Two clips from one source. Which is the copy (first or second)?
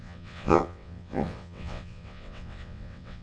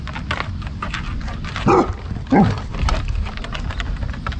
first